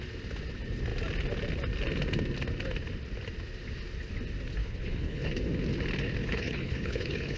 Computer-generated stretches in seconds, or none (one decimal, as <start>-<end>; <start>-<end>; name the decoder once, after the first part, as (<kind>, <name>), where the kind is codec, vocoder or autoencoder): 4.6-5.3 (codec, HILCodec); 6.2-7.4